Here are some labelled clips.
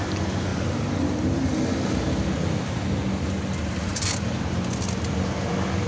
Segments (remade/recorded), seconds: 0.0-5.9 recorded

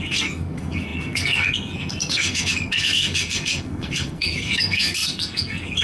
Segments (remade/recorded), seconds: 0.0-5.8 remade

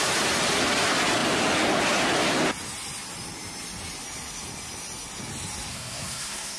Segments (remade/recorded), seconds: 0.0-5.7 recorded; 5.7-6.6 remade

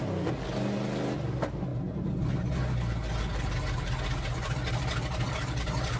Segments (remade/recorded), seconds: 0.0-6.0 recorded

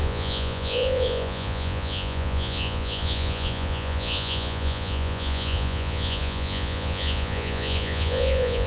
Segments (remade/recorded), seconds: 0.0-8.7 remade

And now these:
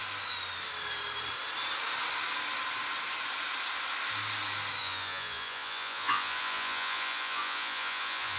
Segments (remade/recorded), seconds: 0.0-4.8 recorded; 4.8-8.4 remade

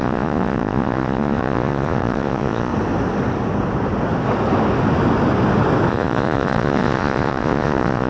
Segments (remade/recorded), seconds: 0.0-2.7 remade; 2.7-5.9 recorded; 5.9-8.1 remade